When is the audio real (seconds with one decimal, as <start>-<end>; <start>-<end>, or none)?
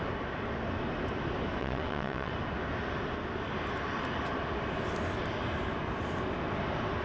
0.0-1.6; 2.3-7.0